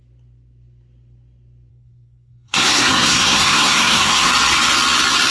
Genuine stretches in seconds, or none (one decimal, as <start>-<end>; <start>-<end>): 0.0-1.7; 4.3-5.3

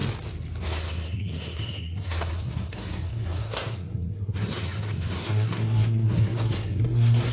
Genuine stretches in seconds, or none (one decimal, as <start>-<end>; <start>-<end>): 0.0-0.6